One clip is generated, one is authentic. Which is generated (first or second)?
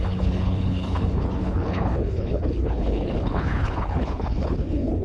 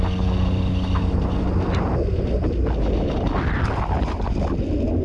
first